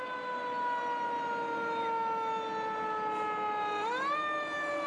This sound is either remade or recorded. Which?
recorded